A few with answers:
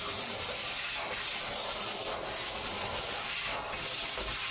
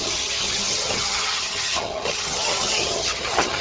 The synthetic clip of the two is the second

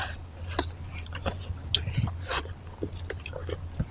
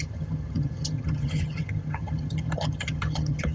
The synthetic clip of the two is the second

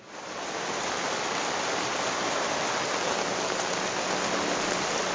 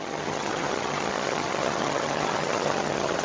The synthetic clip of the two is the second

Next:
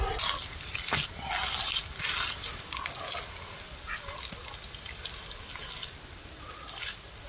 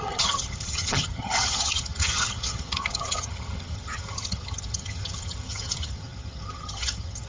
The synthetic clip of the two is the second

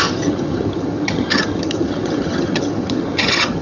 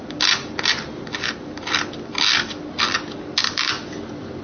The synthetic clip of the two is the first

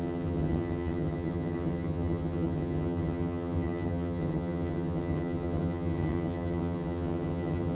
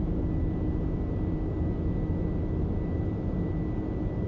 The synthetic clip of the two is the first